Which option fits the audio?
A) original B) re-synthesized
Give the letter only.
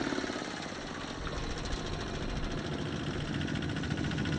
A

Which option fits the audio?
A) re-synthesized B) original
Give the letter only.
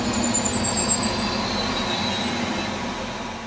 B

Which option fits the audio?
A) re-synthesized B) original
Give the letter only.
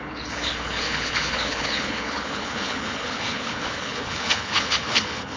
A